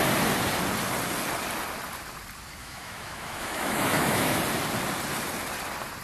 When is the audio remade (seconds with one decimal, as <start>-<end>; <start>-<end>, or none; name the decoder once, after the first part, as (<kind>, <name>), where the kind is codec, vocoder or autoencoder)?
2.6-4.4 (autoencoder, DAC-VAE)